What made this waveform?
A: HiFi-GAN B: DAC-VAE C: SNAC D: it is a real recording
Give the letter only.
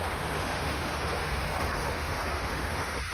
B